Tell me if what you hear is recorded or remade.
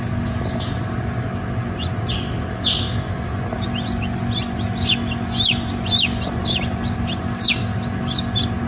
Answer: recorded